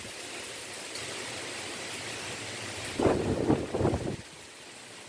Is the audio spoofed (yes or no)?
no